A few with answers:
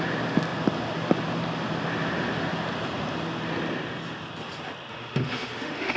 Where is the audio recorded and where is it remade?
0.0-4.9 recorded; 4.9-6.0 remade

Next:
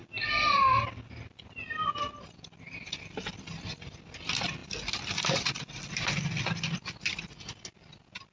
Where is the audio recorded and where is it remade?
0.0-8.3 recorded

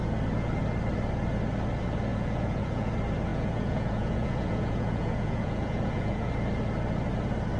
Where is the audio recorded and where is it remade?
0.0-2.1 recorded; 2.1-2.9 remade; 2.9-3.3 recorded; 3.3-6.3 remade; 6.3-7.6 recorded

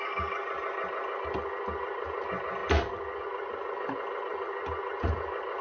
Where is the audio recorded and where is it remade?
0.0-5.6 recorded

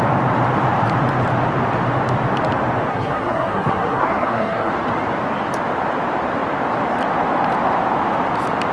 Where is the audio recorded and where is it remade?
0.0-2.9 recorded; 2.9-4.7 remade; 4.7-8.7 recorded

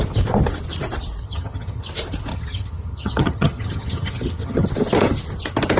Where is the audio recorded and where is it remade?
0.0-1.2 recorded; 1.2-1.8 remade; 1.8-2.3 recorded; 2.3-4.7 remade; 4.7-5.8 recorded

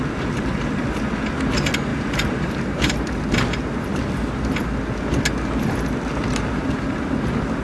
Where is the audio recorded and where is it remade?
0.0-1.9 recorded; 1.9-3.2 remade; 3.2-7.6 recorded

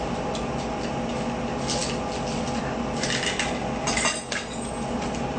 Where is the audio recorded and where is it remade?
0.0-1.8 recorded; 1.8-5.0 remade; 5.0-5.4 recorded